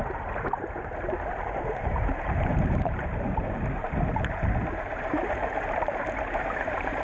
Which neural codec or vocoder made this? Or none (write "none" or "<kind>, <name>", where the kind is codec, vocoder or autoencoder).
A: vocoder, BigVGAN v2